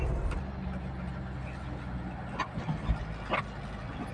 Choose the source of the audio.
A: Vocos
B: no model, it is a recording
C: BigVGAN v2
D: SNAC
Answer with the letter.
B